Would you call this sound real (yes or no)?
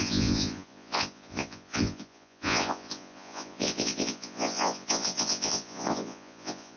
no